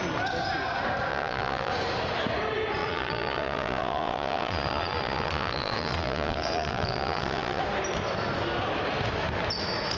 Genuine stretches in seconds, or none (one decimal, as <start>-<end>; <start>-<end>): 0.0-1.1; 1.7-2.8; 7.6-10.0